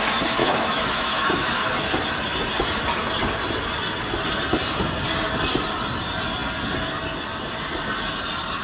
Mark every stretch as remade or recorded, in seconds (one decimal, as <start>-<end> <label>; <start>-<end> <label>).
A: 0.0-0.4 recorded; 0.4-1.7 remade; 1.7-8.6 recorded